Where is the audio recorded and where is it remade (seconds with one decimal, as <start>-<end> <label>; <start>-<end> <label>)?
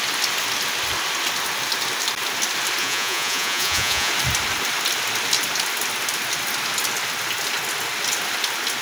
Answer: 0.0-2.8 recorded; 2.8-4.1 remade; 4.1-8.8 recorded